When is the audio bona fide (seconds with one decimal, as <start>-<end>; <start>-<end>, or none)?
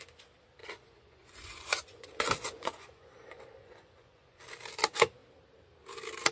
0.0-0.6; 4.4-6.3